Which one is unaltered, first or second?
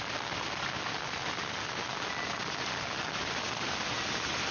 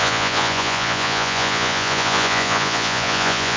first